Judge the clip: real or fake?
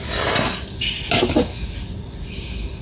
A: real